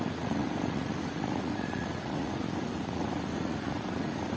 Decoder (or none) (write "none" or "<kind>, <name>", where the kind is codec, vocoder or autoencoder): vocoder, Vocos